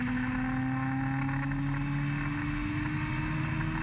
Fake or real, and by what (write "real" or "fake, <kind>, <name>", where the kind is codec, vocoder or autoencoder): real